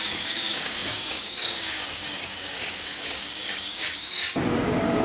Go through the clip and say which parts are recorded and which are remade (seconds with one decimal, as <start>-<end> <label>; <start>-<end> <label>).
0.0-5.0 remade